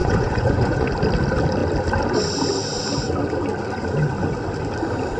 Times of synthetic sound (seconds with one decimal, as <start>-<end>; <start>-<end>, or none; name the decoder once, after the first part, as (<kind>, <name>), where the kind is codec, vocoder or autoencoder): 0.0-0.9 (vocoder, Vocos)